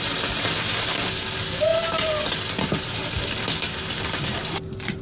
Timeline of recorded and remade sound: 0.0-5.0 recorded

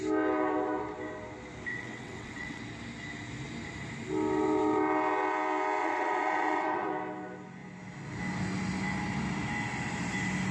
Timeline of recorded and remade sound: 0.0-1.7 recorded; 1.7-2.6 remade; 2.6-5.8 recorded; 5.8-6.9 remade; 6.9-10.5 recorded

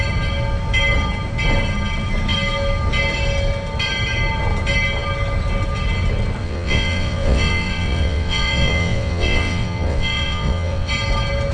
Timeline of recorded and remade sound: 0.0-6.4 recorded; 6.4-10.9 remade; 10.9-11.5 recorded

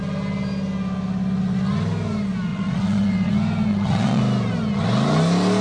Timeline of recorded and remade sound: 0.0-2.5 recorded; 2.5-3.3 remade; 3.3-3.7 recorded; 3.7-4.2 remade; 4.2-5.6 recorded

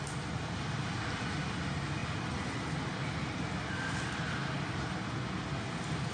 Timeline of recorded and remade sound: 0.0-6.1 recorded